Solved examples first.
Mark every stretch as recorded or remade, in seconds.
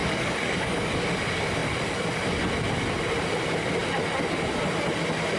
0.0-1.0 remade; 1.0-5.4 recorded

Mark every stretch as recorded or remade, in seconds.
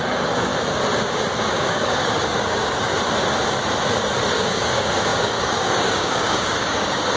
0.0-0.5 remade; 0.5-1.5 recorded; 1.5-2.9 remade; 2.9-4.5 recorded; 4.5-7.2 remade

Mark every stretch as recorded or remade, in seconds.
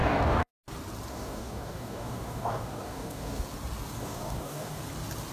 0.0-0.5 remade; 0.5-1.1 recorded; 1.1-3.4 remade; 3.4-4.0 recorded; 4.0-4.8 remade; 4.8-5.3 recorded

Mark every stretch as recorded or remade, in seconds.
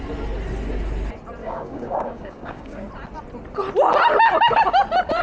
0.0-1.4 recorded; 1.4-2.9 remade; 2.9-5.2 recorded